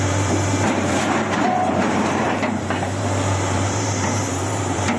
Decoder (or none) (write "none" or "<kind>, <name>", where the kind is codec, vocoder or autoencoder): vocoder, BigVGAN v2